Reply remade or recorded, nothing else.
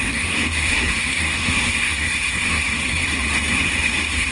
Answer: remade